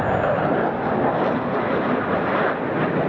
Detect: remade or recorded recorded